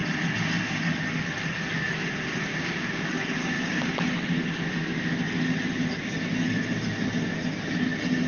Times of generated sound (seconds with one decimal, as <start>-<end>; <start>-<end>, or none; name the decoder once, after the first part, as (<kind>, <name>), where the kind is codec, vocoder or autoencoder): 2.5-3.9 (codec, DAC)

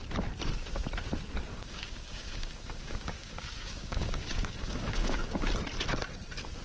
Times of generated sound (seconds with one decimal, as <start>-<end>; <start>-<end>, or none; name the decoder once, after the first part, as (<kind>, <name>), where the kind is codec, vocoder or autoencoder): 1.5-5.5 (codec, DAC)